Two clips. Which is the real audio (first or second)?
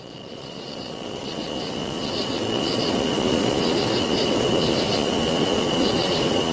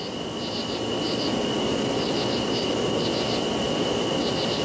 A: second